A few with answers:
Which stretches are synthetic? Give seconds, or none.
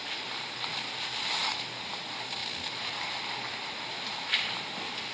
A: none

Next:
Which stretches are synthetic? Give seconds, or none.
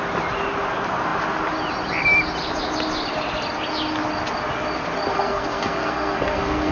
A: 5.1-6.7